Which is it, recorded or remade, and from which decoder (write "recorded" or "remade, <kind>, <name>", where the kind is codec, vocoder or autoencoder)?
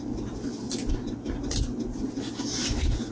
recorded